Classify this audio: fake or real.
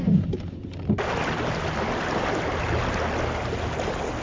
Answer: real